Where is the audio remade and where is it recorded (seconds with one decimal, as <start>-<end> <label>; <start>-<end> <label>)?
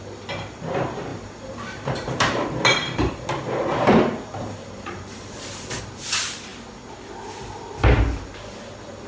0.0-1.1 recorded; 1.1-5.8 remade; 5.8-9.1 recorded